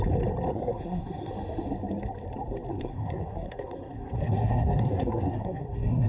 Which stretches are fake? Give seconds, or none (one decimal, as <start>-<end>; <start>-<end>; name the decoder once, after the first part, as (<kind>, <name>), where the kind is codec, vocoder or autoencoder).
0.5-1.3 (codec, SNAC); 2.7-6.1